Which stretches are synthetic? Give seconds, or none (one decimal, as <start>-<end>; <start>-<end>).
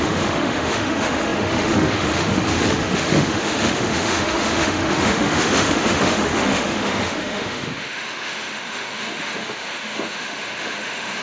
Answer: 0.0-11.2